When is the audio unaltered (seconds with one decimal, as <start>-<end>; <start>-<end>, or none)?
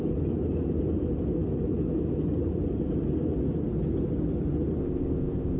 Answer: 0.0-4.8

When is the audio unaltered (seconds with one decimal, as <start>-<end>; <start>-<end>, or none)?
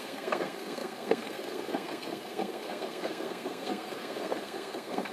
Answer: none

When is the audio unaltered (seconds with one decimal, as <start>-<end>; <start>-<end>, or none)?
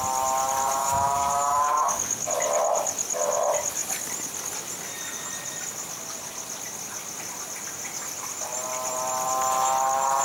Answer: 0.0-0.8; 2.3-10.2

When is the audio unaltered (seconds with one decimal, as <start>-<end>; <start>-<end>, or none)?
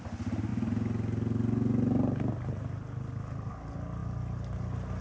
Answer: 0.0-5.0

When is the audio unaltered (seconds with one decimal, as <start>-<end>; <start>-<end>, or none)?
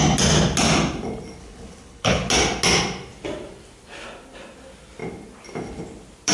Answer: 0.0-1.4; 2.3-6.3